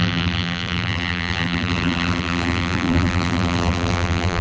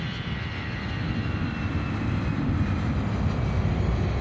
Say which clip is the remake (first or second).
first